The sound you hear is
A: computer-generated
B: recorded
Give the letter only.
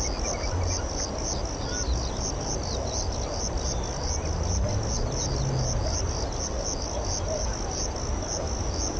B